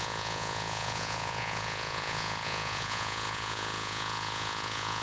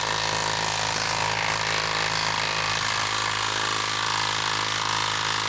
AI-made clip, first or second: first